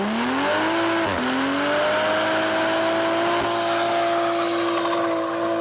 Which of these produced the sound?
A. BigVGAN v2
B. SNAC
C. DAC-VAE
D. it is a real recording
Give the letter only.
D